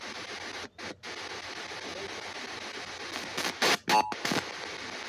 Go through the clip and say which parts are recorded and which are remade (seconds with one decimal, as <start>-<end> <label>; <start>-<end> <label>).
0.0-5.1 recorded